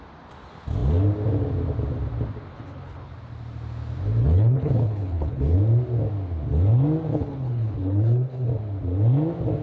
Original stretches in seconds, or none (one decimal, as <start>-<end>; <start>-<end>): 0.0-2.5; 3.1-4.2; 5.6-7.1; 8.5-9.6